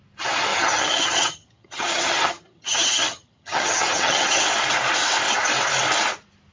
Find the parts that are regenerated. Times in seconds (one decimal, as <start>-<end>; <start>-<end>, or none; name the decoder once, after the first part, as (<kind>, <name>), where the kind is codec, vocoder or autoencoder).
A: 0.5-4.4 (vocoder, HiFi-GAN)